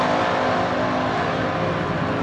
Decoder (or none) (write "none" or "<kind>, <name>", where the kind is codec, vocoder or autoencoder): none